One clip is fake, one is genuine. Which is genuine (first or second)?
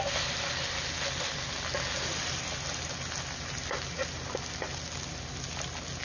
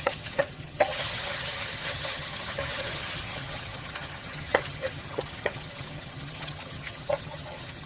first